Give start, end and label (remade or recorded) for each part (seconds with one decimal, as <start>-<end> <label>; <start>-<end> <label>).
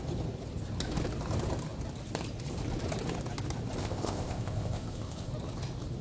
0.0-3.8 recorded; 3.8-5.3 remade; 5.3-6.0 recorded